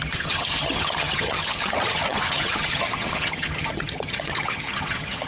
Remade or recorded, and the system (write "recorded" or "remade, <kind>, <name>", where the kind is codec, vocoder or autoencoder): remade, vocoder, HiFi-GAN